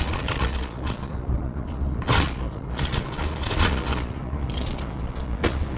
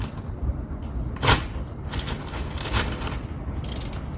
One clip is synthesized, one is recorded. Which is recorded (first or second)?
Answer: second